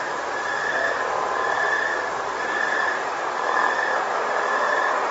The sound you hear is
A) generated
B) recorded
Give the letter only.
A